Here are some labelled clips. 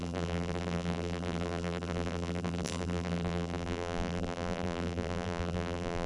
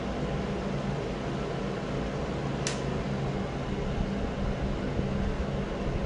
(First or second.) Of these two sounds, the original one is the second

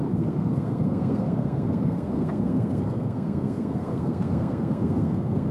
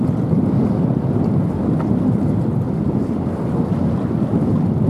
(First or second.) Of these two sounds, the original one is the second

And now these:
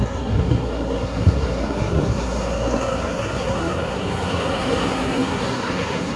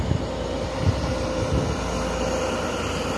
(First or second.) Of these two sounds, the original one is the second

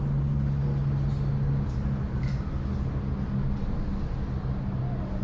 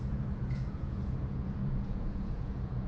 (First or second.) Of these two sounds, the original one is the first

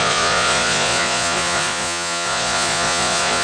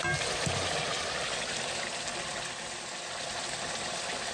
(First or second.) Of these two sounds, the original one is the second